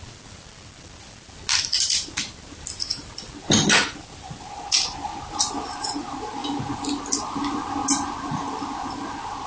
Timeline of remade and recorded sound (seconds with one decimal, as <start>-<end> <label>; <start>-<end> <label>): 0.0-9.5 recorded